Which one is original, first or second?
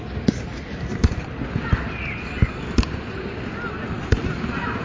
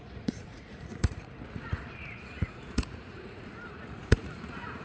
first